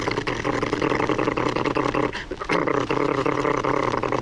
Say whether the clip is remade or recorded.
recorded